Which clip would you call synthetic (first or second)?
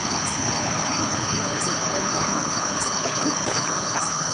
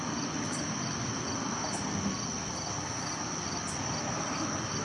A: first